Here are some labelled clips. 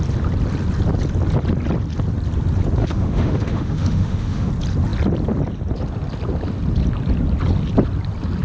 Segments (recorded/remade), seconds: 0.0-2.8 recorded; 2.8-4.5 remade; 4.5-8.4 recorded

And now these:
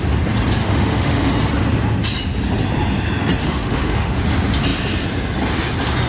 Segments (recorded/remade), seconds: 0.0-0.6 recorded; 0.6-1.3 remade; 1.3-3.4 recorded; 3.4-4.2 remade; 4.2-6.1 recorded

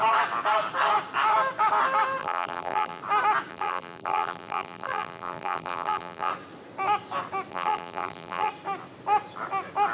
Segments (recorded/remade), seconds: 0.0-2.2 recorded; 2.2-3.0 remade; 3.0-3.5 recorded; 3.5-6.3 remade; 6.3-7.5 recorded; 7.5-8.5 remade; 8.5-9.9 recorded

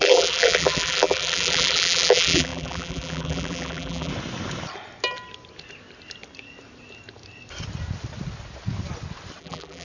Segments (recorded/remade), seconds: 0.0-4.1 remade; 4.1-9.4 recorded; 9.4-9.8 remade

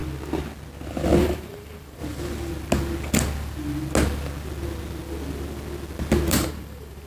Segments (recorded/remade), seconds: 0.0-1.2 recorded; 1.2-2.0 remade; 2.0-6.3 recorded; 6.3-7.1 remade

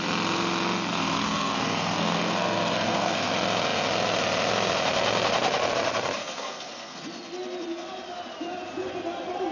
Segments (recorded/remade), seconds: 0.0-0.9 recorded; 0.9-3.3 remade; 3.3-6.2 recorded; 6.2-7.0 remade; 7.0-9.5 recorded

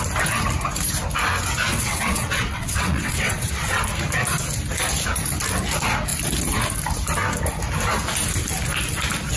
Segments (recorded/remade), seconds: 0.0-1.7 recorded; 1.7-3.8 remade; 3.8-9.4 recorded

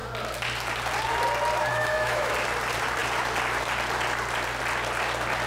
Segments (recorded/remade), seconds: 0.0-1.7 recorded; 1.7-2.3 remade; 2.3-5.5 recorded